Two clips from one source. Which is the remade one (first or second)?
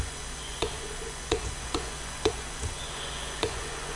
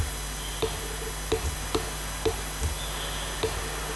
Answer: first